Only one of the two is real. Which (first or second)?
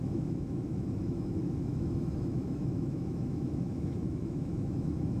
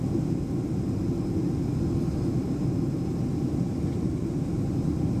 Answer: second